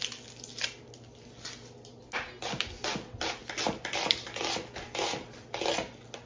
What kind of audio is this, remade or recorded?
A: recorded